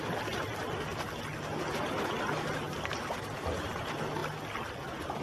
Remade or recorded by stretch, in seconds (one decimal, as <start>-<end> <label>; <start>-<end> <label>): 0.0-5.2 recorded